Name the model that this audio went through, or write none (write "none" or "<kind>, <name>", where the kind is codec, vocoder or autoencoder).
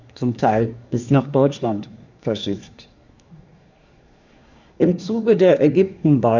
codec, SNAC